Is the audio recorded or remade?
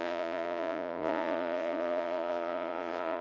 remade